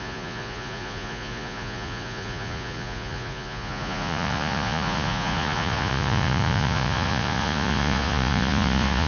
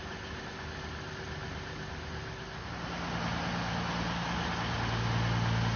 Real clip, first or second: second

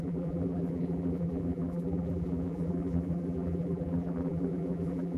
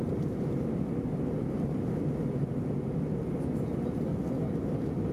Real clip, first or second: second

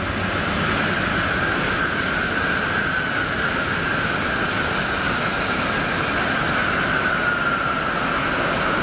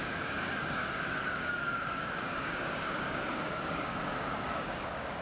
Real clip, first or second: first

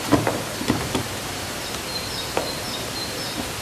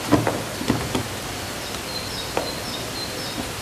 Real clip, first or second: second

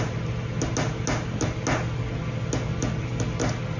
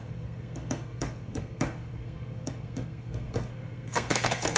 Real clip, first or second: first